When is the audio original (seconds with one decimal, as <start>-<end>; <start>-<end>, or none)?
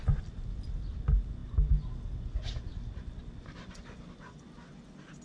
0.0-5.2